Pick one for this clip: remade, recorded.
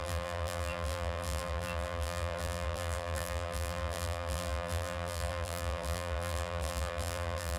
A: remade